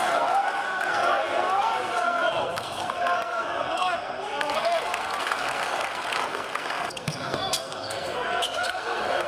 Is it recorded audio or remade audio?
remade